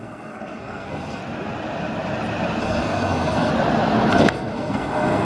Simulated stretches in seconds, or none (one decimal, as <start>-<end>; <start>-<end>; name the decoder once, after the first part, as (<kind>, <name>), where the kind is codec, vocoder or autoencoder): 0.0-1.2 (codec, SNAC); 2.6-3.5; 4.1-5.2